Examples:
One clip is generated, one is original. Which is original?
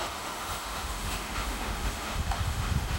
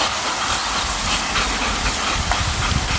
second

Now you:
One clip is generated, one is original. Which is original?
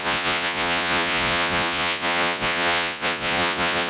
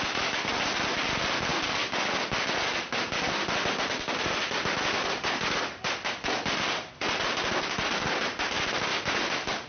second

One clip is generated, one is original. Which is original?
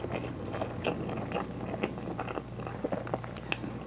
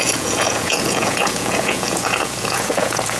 first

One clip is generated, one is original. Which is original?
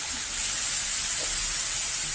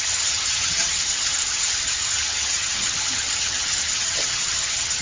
first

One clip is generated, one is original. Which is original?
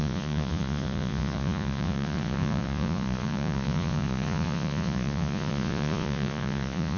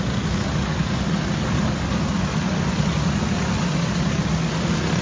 second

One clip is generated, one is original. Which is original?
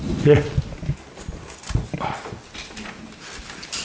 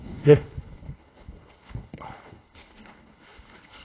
first